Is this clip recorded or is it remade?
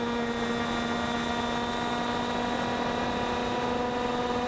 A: recorded